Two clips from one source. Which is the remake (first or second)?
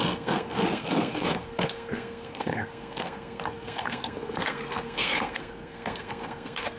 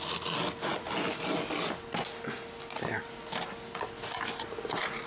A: first